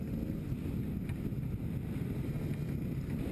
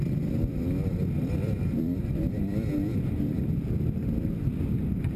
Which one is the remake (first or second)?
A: second